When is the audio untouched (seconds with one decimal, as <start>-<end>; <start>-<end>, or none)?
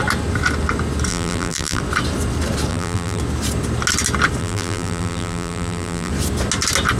0.0-1.1; 1.8-2.7; 3.2-4.4; 6.1-7.0